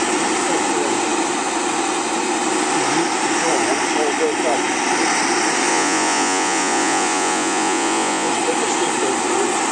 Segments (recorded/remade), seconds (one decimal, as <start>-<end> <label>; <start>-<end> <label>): 0.0-5.7 recorded; 5.7-8.3 remade; 8.3-9.7 recorded